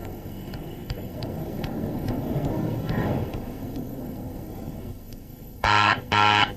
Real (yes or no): no